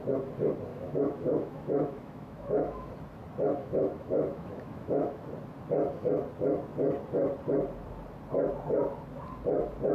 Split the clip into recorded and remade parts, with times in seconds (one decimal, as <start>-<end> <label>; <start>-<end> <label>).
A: 0.0-0.7 recorded; 0.7-2.9 remade; 2.9-3.6 recorded; 3.6-5.2 remade; 5.2-9.9 recorded